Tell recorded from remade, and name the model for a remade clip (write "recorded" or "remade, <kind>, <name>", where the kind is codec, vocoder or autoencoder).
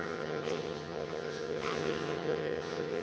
remade, vocoder, HiFi-GAN